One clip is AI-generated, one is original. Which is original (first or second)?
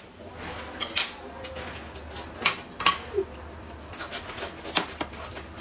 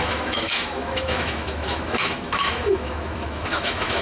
first